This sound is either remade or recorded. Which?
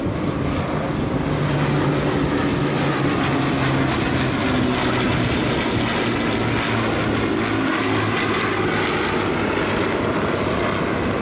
recorded